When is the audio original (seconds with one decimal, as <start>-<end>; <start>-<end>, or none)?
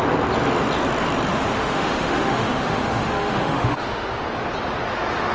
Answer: 0.0-1.3; 4.2-5.3